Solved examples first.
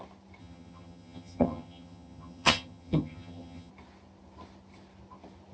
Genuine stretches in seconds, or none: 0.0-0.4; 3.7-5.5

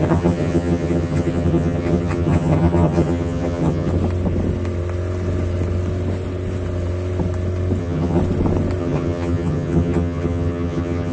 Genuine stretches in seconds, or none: 3.9-7.8; 8.2-8.8

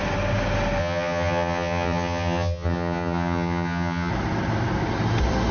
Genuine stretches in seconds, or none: 0.0-0.8; 4.1-5.5

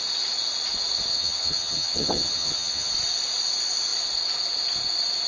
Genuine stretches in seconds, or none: 0.0-1.1; 2.9-5.3

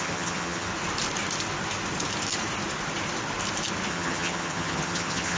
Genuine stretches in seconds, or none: 0.7-3.9

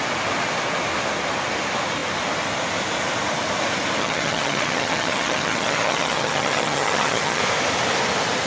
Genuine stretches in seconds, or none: 0.0-4.0; 7.4-8.5

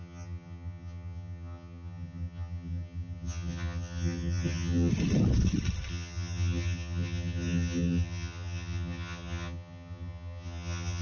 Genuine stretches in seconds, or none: 4.9-5.9